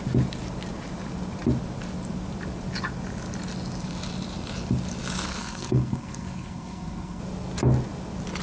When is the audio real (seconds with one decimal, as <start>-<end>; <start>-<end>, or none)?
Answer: 0.0-5.4; 7.2-8.4